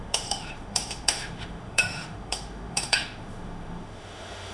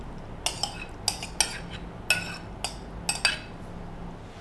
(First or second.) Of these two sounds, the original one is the second